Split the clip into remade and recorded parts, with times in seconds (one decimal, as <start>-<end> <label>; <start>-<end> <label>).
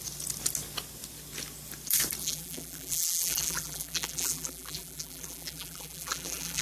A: 0.0-2.2 recorded; 2.2-6.6 remade